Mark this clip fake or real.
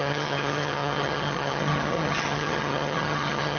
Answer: fake